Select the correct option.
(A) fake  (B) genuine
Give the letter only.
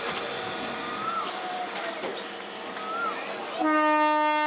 B